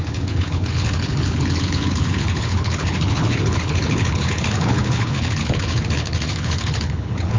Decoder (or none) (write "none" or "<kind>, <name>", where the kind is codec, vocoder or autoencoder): codec, HILCodec